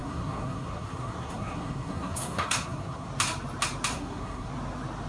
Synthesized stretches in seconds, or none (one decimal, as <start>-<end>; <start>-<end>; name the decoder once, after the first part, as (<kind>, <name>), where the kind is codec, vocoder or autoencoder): 0.0-3.1 (codec, SNAC); 3.9-4.5